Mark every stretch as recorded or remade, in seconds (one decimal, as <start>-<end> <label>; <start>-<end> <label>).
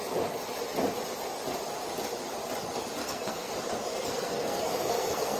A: 0.0-3.0 recorded; 3.0-3.5 remade; 3.5-3.9 recorded; 3.9-5.4 remade